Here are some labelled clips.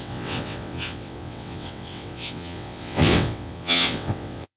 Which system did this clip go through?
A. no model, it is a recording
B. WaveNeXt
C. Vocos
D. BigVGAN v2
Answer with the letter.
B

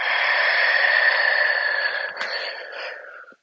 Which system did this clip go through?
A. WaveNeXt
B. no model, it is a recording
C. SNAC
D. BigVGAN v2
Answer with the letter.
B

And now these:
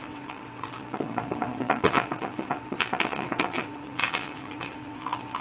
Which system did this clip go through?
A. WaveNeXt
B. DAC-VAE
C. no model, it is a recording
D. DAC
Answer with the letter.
A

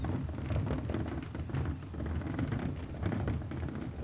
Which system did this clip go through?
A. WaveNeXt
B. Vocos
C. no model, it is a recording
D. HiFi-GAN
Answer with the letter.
C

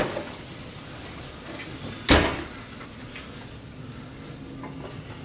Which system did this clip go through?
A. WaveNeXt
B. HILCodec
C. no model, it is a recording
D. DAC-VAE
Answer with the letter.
C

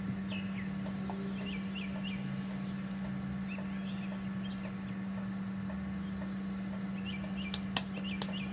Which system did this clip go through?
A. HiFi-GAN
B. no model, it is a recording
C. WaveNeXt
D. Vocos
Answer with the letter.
B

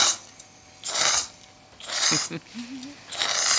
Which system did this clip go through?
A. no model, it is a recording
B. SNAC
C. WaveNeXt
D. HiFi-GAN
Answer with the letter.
A